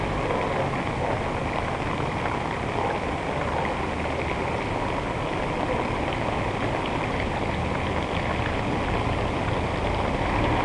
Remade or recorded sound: recorded